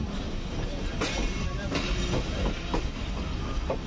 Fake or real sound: real